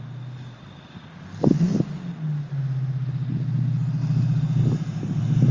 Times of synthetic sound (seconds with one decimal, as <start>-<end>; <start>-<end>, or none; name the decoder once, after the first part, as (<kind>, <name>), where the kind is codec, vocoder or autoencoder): none